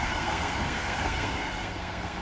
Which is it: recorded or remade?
remade